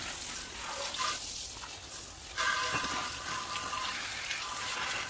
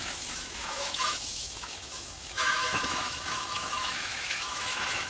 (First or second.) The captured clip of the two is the first